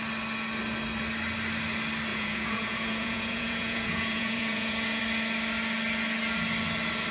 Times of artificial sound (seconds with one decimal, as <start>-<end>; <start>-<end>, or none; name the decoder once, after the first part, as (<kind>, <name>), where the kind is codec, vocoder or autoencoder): 2.1-5.0 (vocoder, Vocos)